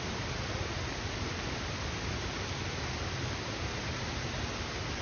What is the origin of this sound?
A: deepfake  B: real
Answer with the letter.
B